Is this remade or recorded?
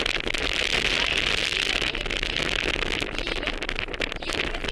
recorded